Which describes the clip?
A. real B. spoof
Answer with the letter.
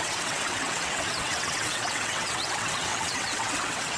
B